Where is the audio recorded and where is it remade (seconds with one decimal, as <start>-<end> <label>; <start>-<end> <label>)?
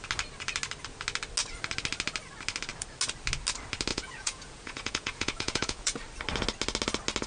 0.0-3.9 recorded; 3.9-6.0 remade; 6.0-7.3 recorded